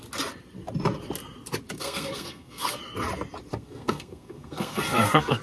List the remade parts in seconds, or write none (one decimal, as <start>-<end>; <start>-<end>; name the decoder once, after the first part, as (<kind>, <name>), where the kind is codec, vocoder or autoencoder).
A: 1.8-2.8 (codec, SNAC); 3.5-5.4